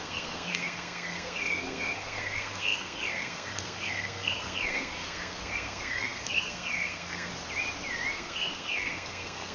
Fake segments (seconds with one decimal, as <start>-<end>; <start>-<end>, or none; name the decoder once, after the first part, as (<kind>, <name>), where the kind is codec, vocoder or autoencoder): 0.0-7.3 (codec, SNAC); 8.1-9.5